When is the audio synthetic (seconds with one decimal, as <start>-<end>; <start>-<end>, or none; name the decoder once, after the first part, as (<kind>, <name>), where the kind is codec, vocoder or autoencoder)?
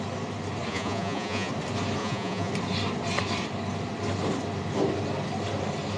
0.7-1.5 (vocoder, Vocos); 2.0-2.5